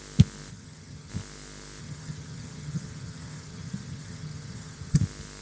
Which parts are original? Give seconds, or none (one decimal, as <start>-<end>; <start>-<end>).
0.0-0.5; 1.1-1.8; 5.0-5.4